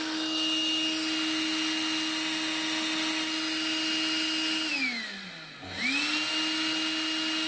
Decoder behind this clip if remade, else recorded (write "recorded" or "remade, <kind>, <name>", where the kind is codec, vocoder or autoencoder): recorded